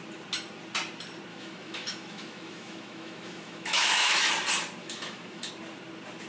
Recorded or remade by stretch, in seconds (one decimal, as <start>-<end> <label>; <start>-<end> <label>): 0.0-1.3 recorded; 1.3-4.3 remade; 4.3-4.8 recorded; 4.8-5.5 remade; 5.5-6.3 recorded